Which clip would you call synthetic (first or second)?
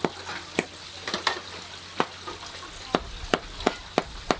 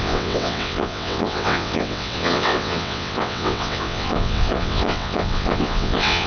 second